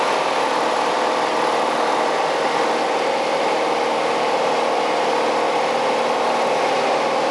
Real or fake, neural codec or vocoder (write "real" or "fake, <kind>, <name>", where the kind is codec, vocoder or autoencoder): real